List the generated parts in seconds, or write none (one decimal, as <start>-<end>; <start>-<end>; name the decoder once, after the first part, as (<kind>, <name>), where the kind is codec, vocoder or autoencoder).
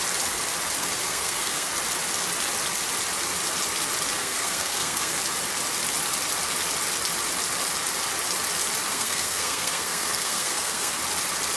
0.8-1.7 (codec, SNAC); 4.2-5.2; 8.9-11.0